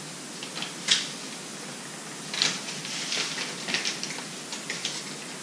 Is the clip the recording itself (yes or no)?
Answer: yes